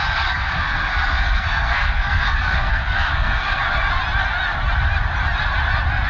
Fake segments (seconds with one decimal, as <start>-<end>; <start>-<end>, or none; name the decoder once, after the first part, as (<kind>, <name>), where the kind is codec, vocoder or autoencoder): 0.0-3.6 (codec, SNAC)